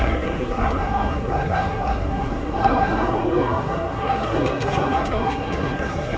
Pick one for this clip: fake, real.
fake